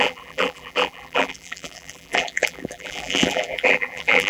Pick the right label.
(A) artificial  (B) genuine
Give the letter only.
A